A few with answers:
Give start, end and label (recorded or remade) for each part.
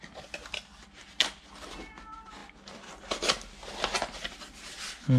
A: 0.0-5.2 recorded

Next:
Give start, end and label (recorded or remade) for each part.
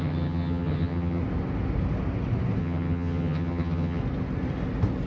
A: 0.0-1.2 remade; 1.2-2.6 recorded; 2.6-4.0 remade; 4.0-5.1 recorded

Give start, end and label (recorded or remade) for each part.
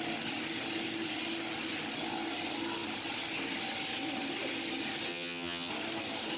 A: 0.0-5.1 recorded; 5.1-5.7 remade; 5.7-6.4 recorded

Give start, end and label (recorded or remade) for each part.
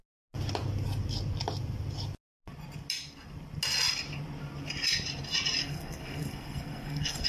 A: 0.0-5.6 recorded; 5.6-7.3 remade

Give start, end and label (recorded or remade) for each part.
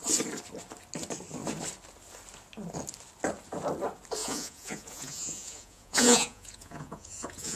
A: 0.0-4.2 recorded; 4.2-7.6 remade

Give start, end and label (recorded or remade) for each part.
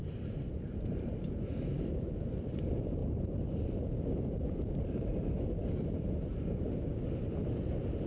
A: 0.0-6.9 remade; 6.9-7.5 recorded; 7.5-8.1 remade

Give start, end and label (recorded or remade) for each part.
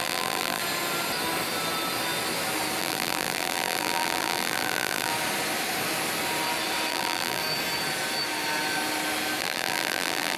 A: 0.0-0.6 remade; 0.6-2.8 recorded; 2.8-5.1 remade; 5.1-6.9 recorded; 6.9-7.4 remade; 7.4-9.4 recorded; 9.4-10.4 remade